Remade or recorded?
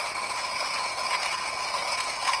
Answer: remade